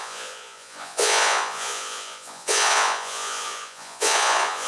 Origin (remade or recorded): remade